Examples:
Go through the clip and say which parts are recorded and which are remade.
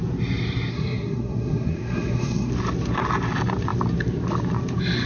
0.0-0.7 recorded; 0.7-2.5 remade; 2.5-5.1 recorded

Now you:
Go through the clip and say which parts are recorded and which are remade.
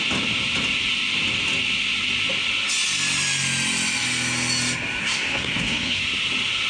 0.0-5.0 recorded; 5.0-6.0 remade; 6.0-6.7 recorded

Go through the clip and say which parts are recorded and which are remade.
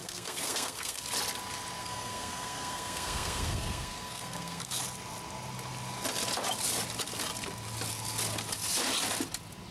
0.0-1.0 remade; 1.0-1.8 recorded; 1.8-4.8 remade; 4.8-9.7 recorded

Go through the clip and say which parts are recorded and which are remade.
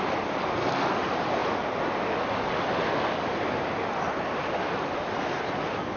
0.0-6.0 recorded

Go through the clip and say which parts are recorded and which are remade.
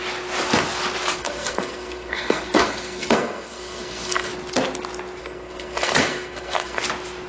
0.0-1.2 recorded; 1.2-4.3 remade; 4.3-5.2 recorded; 5.2-6.8 remade; 6.8-7.3 recorded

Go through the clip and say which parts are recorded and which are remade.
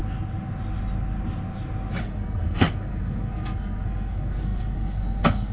0.0-2.0 recorded; 2.0-5.5 remade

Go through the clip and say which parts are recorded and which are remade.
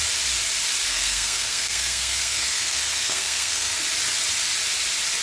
0.0-0.9 recorded; 0.9-3.8 remade; 3.8-5.2 recorded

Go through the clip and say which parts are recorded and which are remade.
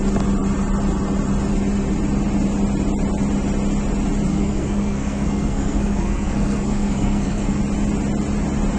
0.0-4.3 recorded; 4.3-7.6 remade; 7.6-8.8 recorded